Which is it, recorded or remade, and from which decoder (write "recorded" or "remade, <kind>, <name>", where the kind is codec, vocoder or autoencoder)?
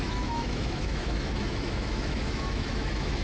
remade, autoencoder, DAC-VAE